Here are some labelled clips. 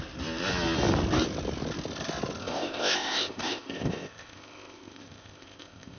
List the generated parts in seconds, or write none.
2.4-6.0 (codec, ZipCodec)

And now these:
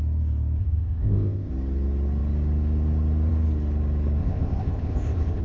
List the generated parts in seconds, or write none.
0.6-1.5 (codec, ZipCodec); 4.2-5.4

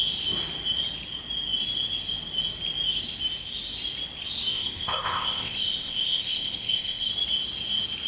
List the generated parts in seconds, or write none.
4.5-7.1 (codec, ZipCodec)